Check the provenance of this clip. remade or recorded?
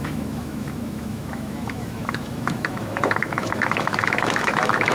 remade